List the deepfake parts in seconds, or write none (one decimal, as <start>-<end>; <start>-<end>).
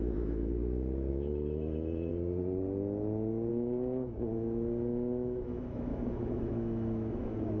0.0-0.5; 1.1-2.1; 3.5-7.6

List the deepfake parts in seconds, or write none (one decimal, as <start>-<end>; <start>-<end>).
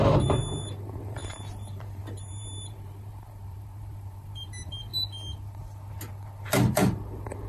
0.0-4.9; 6.4-7.5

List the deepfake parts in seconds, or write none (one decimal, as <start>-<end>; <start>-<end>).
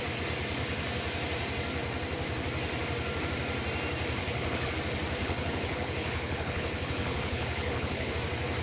4.2-4.7; 5.2-8.1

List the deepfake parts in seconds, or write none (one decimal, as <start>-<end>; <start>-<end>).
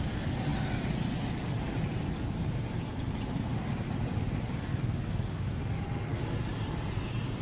5.1-5.6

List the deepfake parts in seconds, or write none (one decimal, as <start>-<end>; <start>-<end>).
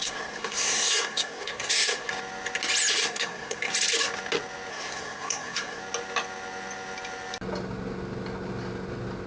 0.0-2.1; 3.0-3.7; 4.7-5.8